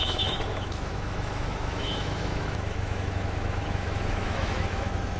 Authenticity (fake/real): fake